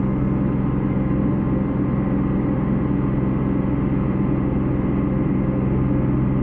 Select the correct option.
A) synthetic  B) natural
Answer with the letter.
B